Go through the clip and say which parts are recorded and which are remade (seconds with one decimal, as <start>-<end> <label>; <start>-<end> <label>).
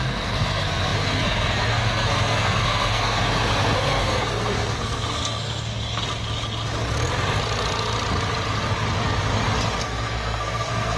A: 0.0-6.0 remade; 6.0-9.8 recorded; 9.8-11.0 remade